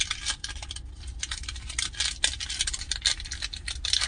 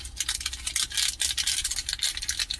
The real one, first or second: second